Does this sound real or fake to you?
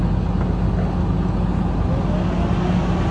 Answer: real